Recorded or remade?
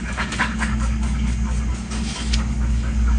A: remade